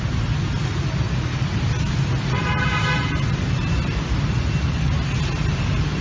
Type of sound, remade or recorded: recorded